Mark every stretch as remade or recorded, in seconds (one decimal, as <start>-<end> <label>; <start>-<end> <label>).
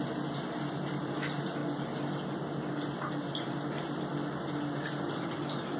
0.0-5.8 recorded